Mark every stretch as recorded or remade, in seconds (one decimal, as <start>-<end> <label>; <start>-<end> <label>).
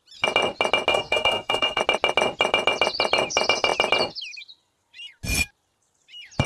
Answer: 0.0-0.9 recorded; 0.9-1.8 remade; 1.8-6.5 recorded